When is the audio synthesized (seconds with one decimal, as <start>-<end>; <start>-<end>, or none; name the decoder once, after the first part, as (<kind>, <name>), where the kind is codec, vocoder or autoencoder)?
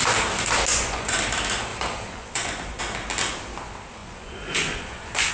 0.7-1.2 (vocoder, Vocos); 1.7-2.8; 4.0-5.3